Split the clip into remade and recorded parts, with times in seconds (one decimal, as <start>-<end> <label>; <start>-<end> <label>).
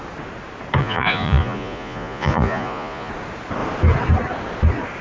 0.0-0.8 recorded; 0.8-3.1 remade; 3.1-5.0 recorded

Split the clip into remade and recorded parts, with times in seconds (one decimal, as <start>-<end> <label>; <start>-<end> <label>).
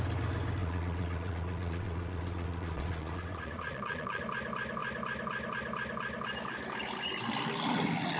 0.0-0.6 recorded; 0.6-4.2 remade; 4.2-8.2 recorded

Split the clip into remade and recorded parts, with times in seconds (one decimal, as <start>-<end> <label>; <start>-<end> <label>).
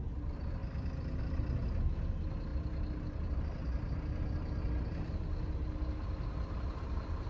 0.0-7.3 recorded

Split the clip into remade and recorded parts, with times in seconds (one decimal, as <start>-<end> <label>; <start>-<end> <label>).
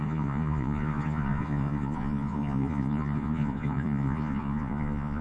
0.0-5.2 remade